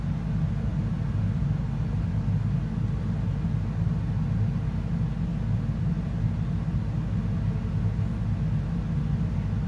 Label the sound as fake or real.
real